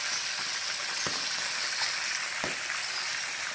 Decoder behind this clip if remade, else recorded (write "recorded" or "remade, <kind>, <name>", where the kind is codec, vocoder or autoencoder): recorded